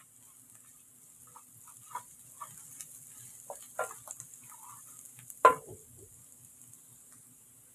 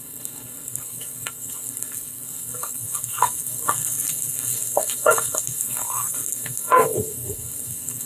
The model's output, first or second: second